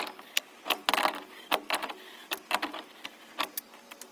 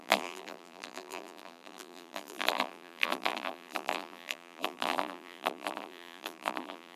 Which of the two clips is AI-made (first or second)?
second